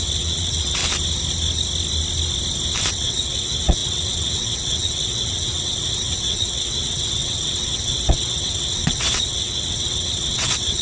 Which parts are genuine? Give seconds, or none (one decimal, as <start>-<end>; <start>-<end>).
0.8-2.8